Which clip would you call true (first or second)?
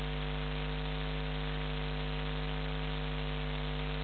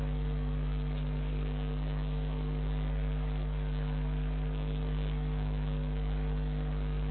first